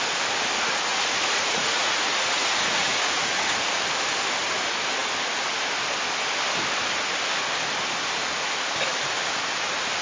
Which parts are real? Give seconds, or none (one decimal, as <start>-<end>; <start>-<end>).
0.0-0.9; 3.8-10.0